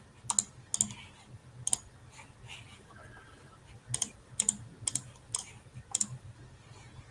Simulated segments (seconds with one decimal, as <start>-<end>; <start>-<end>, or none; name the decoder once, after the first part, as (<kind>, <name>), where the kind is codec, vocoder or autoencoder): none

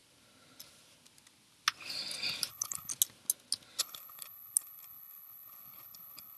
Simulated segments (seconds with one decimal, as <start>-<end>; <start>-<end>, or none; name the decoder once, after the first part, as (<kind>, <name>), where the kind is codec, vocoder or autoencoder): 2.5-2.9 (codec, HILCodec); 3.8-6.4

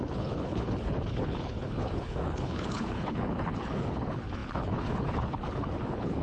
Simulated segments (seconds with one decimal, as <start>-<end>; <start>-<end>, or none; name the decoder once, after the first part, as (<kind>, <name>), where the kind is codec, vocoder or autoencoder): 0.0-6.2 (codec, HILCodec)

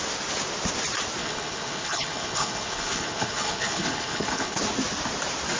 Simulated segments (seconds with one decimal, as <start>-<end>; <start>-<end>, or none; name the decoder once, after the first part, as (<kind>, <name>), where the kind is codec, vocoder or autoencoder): 1.2-4.6 (codec, HILCodec)

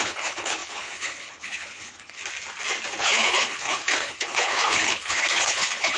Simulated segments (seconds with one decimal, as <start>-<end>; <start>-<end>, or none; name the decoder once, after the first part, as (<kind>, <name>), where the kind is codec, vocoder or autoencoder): 0.0-2.2 (codec, HILCodec); 3.0-6.0